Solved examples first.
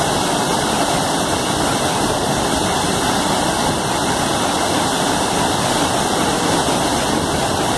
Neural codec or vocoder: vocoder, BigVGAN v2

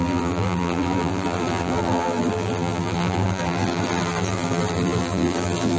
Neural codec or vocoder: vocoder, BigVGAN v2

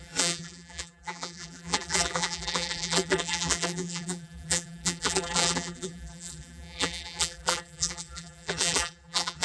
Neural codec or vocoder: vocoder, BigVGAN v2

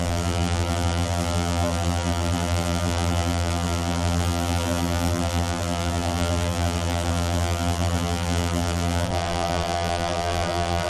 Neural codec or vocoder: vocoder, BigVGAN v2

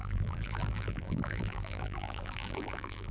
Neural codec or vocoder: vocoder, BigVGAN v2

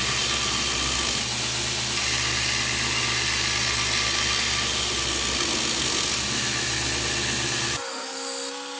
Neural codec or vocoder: none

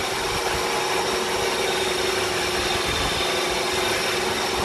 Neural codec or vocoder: none